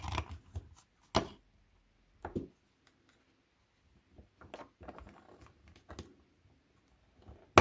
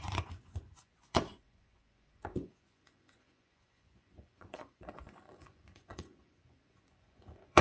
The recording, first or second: first